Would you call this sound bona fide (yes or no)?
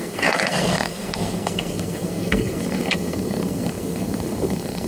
no